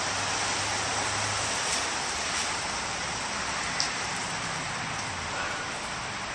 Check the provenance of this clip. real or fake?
real